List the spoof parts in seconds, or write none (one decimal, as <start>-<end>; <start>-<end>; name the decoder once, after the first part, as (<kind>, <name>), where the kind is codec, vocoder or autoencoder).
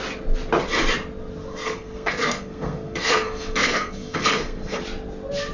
1.5-4.8 (codec, SNAC)